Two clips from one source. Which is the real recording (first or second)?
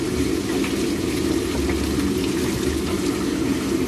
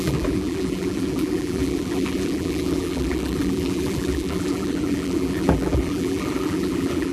first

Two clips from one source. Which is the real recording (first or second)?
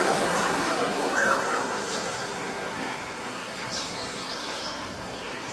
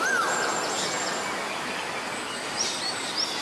second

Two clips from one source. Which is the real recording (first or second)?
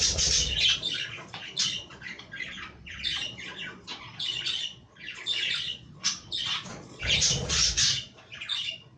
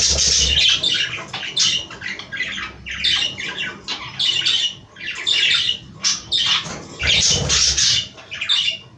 second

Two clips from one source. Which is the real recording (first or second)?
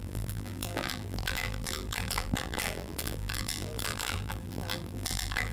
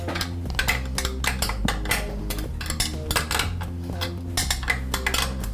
second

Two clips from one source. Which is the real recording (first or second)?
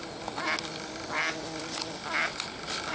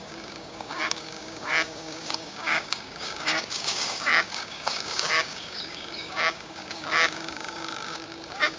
first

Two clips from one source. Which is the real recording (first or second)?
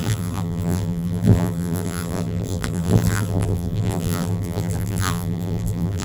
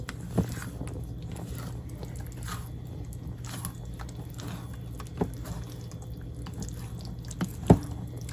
second